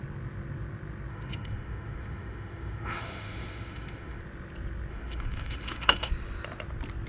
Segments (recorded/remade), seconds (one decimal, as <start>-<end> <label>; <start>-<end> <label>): 0.0-1.1 recorded; 1.1-4.2 remade; 4.2-4.9 recorded; 4.9-6.1 remade; 6.1-7.1 recorded